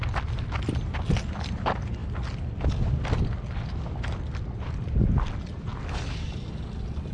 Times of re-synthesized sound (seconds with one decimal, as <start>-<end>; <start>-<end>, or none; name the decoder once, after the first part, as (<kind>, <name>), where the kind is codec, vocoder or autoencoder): none